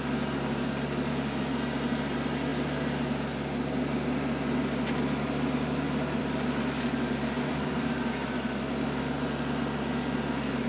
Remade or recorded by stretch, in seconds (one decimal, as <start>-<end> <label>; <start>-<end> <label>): 0.0-10.7 recorded

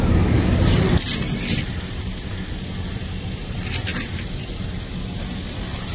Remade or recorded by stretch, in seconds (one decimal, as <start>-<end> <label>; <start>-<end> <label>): 0.0-5.9 recorded

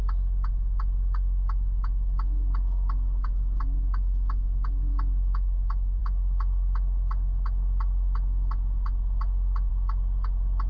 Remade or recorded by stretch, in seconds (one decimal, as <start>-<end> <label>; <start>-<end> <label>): 0.0-10.7 recorded

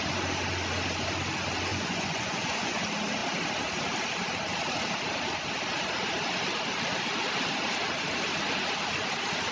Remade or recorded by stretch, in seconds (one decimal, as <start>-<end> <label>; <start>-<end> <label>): 0.0-1.7 recorded; 1.7-2.8 remade; 2.8-9.5 recorded

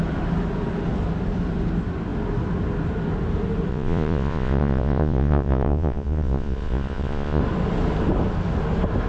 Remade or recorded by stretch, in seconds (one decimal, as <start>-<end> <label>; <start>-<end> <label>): 0.0-3.7 recorded; 3.7-7.4 remade; 7.4-9.1 recorded

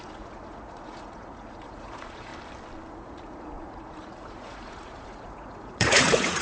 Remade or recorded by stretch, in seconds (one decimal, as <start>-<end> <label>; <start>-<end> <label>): 0.0-2.3 remade; 2.3-2.9 recorded; 2.9-6.4 remade

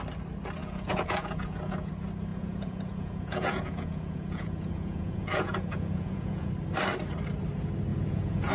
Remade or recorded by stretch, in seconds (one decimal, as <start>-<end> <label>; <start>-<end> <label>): 0.0-0.6 recorded; 0.6-1.9 remade; 1.9-2.3 recorded; 2.3-6.5 remade; 6.5-7.9 recorded; 7.9-8.5 remade

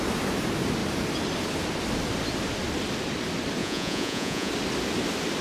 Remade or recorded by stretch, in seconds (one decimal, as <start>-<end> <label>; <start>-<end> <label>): 0.0-3.6 recorded; 3.6-4.5 remade; 4.5-5.4 recorded